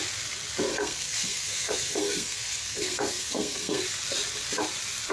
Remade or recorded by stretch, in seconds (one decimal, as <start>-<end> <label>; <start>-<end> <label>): 0.0-0.7 recorded; 0.7-3.8 remade; 3.8-5.1 recorded